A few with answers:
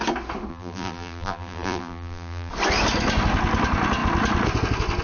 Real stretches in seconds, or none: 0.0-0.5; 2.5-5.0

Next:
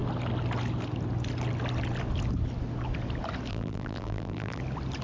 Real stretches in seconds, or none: 0.0-3.5; 4.6-5.0

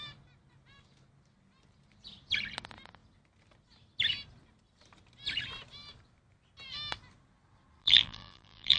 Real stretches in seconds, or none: 0.0-7.8

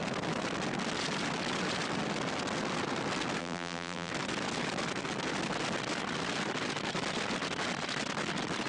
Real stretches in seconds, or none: 0.0-3.4; 4.1-8.7

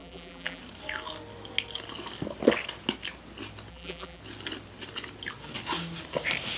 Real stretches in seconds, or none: 0.6-3.7; 4.2-6.6

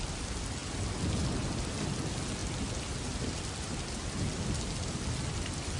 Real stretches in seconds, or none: 0.0-5.8

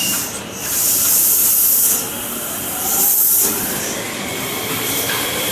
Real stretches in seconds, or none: 1.4-4.7

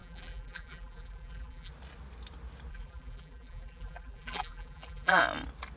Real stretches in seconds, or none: 1.7-2.7; 5.2-5.8